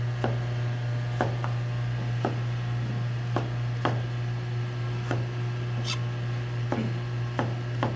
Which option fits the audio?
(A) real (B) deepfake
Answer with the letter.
A